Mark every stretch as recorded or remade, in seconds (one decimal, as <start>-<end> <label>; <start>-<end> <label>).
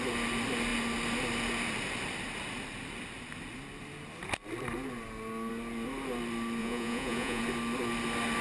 0.0-6.6 recorded; 6.6-7.4 remade; 7.4-8.4 recorded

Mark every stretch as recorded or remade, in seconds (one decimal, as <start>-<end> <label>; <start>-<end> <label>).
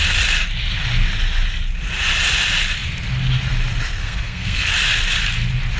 0.0-4.0 recorded; 4.0-4.7 remade; 4.7-5.8 recorded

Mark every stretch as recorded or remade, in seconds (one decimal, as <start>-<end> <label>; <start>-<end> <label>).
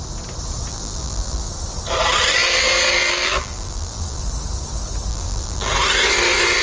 0.0-0.7 recorded; 0.7-1.5 remade; 1.5-3.0 recorded; 3.0-4.3 remade; 4.3-5.1 recorded; 5.1-5.7 remade; 5.7-6.6 recorded